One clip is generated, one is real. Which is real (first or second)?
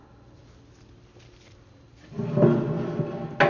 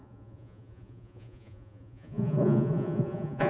first